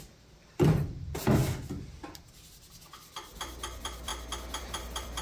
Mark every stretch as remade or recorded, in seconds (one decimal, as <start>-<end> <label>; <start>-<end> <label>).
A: 0.0-1.4 remade; 1.4-2.5 recorded; 2.5-4.1 remade; 4.1-4.6 recorded; 4.6-5.2 remade